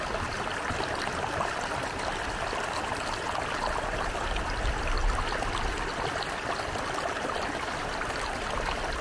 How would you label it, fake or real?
real